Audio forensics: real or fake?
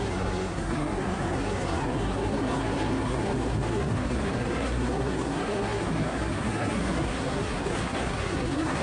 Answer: fake